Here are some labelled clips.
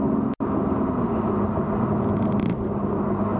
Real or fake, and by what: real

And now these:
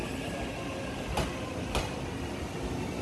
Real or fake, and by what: real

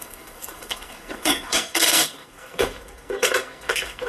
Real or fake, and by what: fake, codec, SNAC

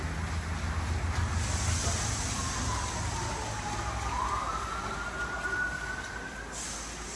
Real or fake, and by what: real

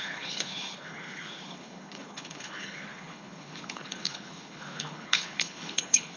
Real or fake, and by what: fake, codec, HILCodec